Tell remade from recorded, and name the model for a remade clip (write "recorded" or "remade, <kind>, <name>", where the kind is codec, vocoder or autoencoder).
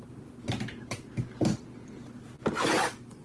recorded